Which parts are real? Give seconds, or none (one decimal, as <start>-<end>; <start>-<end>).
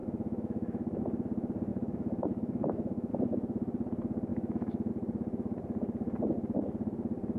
1.0-1.7; 3.1-4.3; 4.9-7.4